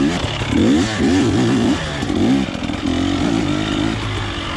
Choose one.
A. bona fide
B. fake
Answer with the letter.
A